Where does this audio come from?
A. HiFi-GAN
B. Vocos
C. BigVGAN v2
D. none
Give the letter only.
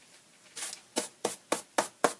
D